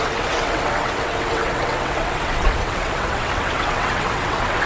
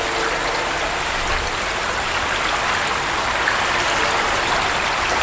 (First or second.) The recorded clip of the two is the second